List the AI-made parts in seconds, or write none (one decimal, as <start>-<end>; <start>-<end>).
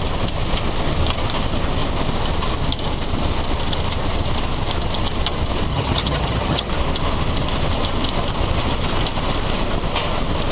5.7-6.7